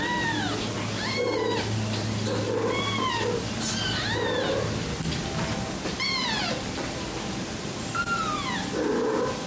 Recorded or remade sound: recorded